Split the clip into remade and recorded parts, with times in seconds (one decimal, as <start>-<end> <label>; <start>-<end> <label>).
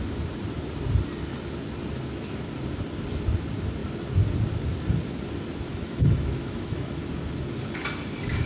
0.0-5.7 recorded; 5.7-7.1 remade; 7.1-8.5 recorded